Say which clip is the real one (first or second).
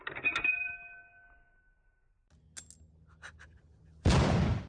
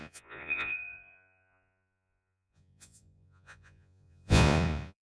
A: first